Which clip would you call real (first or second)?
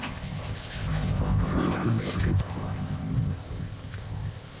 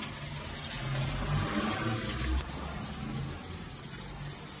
second